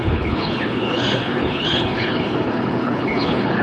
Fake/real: fake